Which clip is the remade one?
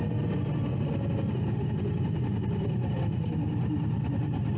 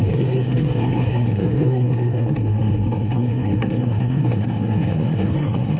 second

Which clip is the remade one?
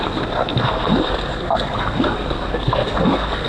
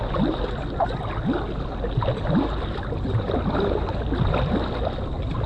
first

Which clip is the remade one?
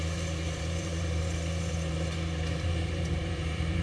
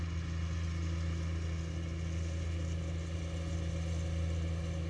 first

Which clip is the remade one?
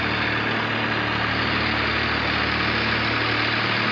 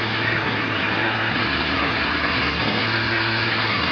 second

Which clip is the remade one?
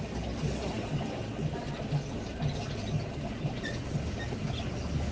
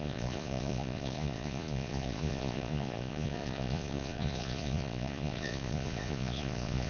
second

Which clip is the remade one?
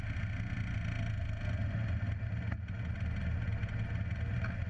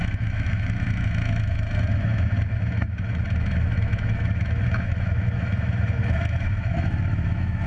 second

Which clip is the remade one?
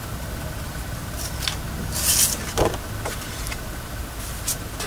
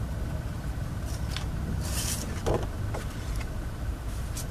second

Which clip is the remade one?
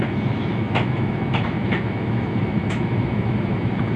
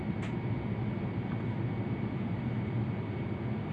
first